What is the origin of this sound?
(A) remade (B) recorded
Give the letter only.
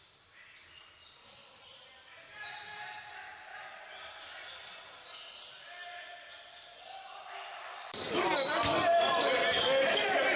B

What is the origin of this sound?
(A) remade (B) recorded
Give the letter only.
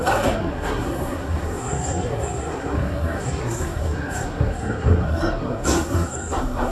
A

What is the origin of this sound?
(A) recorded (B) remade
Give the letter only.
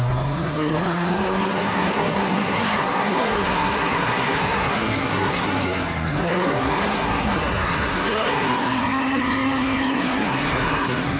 B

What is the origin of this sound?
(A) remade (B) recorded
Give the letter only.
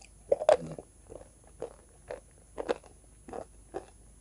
B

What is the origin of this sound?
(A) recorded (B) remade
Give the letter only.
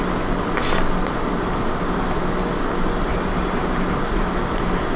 A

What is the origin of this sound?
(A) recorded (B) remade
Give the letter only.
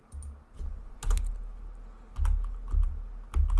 A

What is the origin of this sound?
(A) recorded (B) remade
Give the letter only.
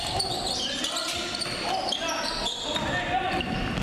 A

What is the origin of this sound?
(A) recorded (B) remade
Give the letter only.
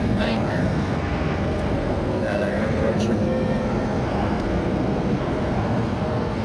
B